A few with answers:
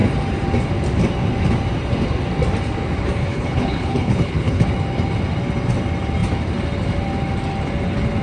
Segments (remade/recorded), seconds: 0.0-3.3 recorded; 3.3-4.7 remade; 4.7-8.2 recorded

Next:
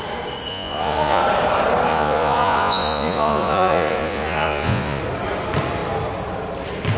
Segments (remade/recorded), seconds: 0.0-0.5 recorded; 0.5-1.2 remade; 1.2-1.9 recorded; 1.9-5.0 remade; 5.0-7.0 recorded

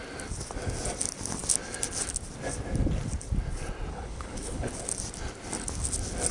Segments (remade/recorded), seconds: 0.0-3.9 recorded; 3.9-4.7 remade; 4.7-6.3 recorded

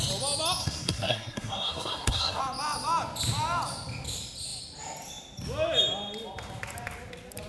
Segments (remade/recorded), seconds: 0.0-0.6 recorded; 0.6-2.4 remade; 2.4-7.5 recorded

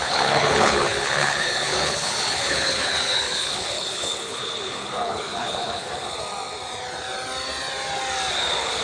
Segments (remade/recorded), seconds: 0.0-6.2 remade; 6.2-8.3 recorded; 8.3-8.8 remade

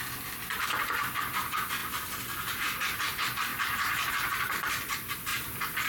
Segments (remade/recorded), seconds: 0.0-1.8 recorded; 1.8-2.6 remade; 2.6-3.5 recorded; 3.5-4.1 remade; 4.1-5.3 recorded; 5.3-5.9 remade

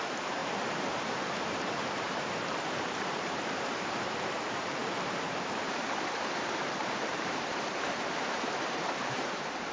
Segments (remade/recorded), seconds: 0.0-4.8 remade; 4.8-5.3 recorded; 5.3-9.7 remade